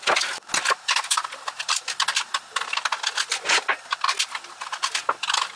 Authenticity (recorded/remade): recorded